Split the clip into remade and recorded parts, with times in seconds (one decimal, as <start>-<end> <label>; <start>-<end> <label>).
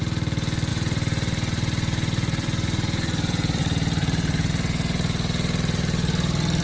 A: 0.0-0.7 recorded; 0.7-3.6 remade; 3.6-4.0 recorded; 4.0-4.5 remade; 4.5-6.6 recorded